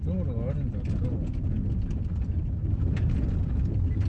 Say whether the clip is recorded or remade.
recorded